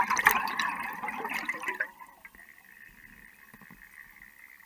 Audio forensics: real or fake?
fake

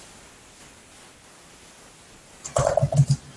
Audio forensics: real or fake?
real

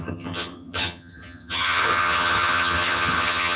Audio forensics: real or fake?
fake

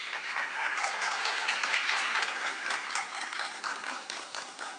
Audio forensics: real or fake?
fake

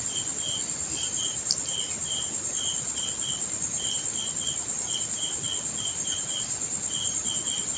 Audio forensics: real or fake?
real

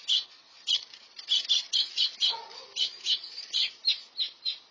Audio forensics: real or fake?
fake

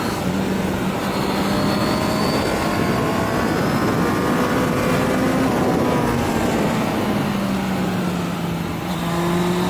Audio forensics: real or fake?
real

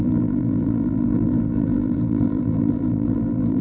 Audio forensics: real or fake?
fake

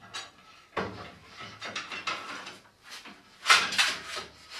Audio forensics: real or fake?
real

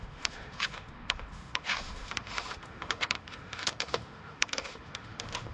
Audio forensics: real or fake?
fake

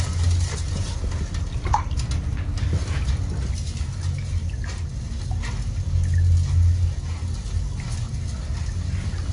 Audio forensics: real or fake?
real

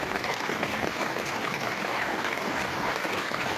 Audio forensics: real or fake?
fake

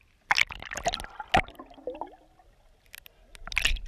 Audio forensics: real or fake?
real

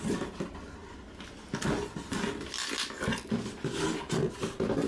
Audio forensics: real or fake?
real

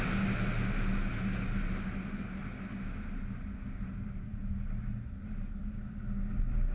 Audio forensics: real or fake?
real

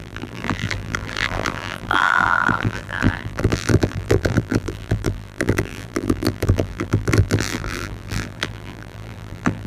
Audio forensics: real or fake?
fake